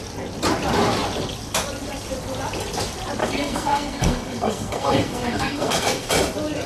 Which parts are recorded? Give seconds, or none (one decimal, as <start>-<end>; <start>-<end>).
0.0-3.2; 6.1-6.7